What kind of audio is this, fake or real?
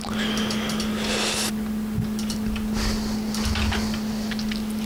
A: real